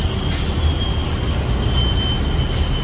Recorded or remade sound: recorded